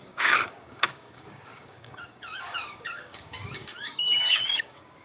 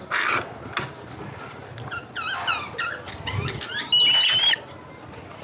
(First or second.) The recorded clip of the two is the second